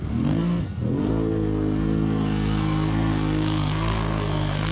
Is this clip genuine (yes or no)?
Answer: no